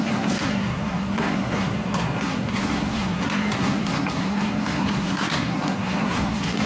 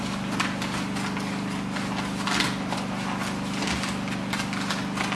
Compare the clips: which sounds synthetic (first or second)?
first